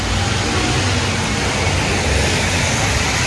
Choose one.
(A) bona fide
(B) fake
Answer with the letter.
A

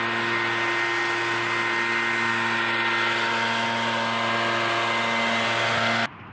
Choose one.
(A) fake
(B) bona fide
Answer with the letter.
B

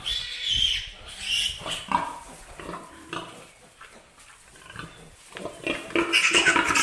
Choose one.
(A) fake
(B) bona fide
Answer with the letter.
B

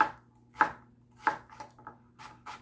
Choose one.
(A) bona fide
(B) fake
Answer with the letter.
A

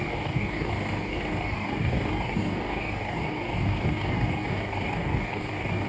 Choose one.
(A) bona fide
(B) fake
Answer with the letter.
B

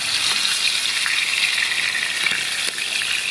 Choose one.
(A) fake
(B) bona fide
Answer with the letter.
B